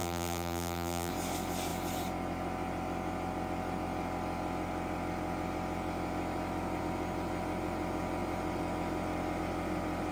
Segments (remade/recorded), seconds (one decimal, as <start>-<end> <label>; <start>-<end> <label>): 0.0-1.1 remade; 1.1-10.1 recorded